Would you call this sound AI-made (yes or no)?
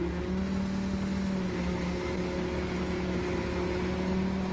no